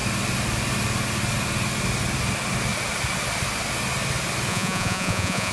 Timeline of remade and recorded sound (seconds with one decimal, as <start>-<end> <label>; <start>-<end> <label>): 0.0-4.5 recorded; 4.5-5.5 remade